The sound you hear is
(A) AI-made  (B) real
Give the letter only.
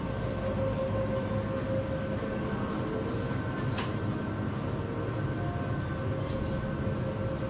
B